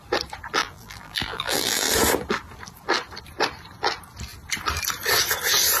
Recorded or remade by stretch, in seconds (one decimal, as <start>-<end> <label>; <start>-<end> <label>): 0.0-0.6 recorded; 0.6-1.9 remade; 1.9-5.8 recorded